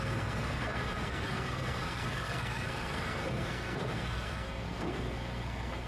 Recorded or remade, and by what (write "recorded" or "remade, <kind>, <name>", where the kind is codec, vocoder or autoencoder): remade, codec, SNAC